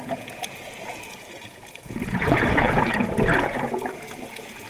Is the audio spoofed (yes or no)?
yes